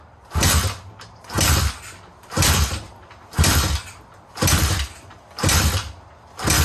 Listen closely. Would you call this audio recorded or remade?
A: recorded